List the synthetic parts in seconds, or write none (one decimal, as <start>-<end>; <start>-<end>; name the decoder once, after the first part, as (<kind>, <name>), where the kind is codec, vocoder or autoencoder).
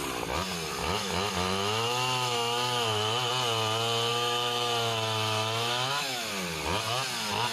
0.8-3.3 (autoencoder, DAC-VAE); 4.1-6.3